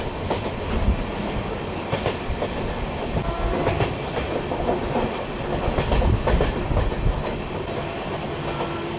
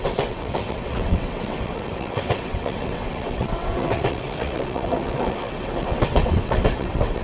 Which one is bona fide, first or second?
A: first